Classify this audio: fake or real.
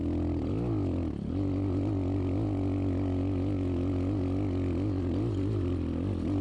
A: real